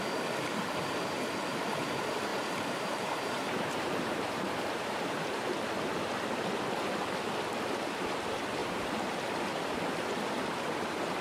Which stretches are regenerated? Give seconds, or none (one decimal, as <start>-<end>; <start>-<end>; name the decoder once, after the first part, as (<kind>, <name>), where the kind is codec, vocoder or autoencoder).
2.3-5.5 (vocoder, BigVGAN v2); 8.6-9.7